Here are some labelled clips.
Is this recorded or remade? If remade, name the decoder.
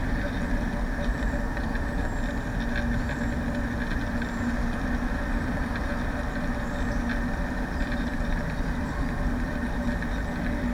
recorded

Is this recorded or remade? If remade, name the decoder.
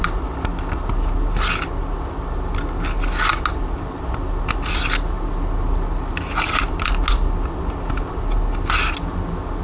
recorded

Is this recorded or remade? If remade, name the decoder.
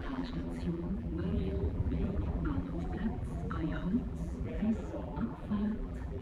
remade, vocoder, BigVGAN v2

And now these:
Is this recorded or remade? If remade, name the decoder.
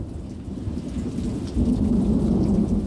recorded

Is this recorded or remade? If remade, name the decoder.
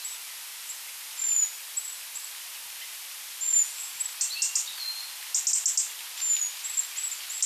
recorded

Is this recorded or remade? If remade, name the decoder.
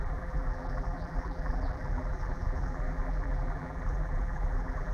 remade, vocoder, BigVGAN v2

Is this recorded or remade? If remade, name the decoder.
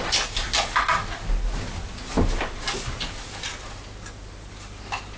recorded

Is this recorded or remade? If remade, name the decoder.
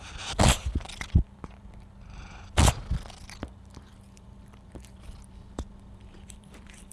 remade, vocoder, BigVGAN v2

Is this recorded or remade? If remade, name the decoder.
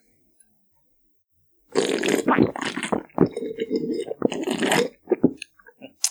recorded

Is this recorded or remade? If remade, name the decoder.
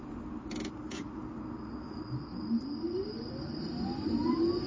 recorded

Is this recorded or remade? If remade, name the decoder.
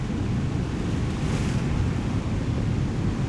recorded